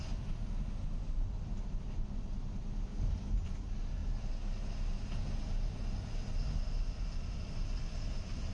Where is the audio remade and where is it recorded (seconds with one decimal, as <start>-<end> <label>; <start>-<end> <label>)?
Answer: 0.0-8.5 recorded